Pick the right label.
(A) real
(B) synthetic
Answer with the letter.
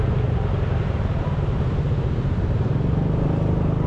A